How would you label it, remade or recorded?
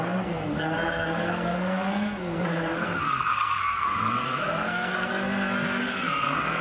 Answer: remade